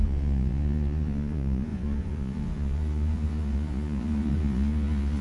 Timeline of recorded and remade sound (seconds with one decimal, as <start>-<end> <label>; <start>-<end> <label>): 0.0-5.2 remade